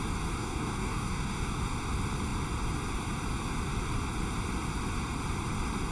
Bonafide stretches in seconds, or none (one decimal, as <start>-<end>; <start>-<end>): 0.0-0.4; 1.6-5.9